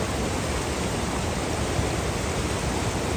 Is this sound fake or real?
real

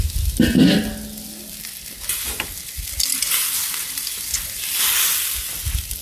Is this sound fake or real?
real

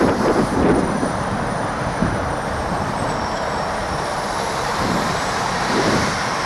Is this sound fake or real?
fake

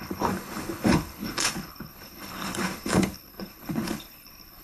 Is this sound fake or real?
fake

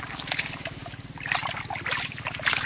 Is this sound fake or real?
real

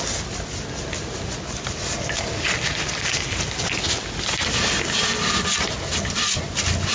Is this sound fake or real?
real